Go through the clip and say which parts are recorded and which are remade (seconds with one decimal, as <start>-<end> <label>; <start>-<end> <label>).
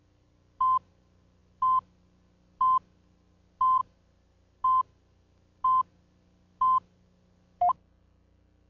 0.0-8.7 recorded